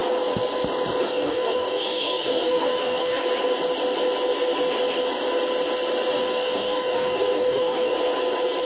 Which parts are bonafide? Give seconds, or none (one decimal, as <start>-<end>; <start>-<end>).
0.0-1.0; 3.2-6.1; 7.9-8.6